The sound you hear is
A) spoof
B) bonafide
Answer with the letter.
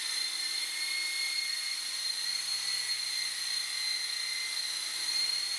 B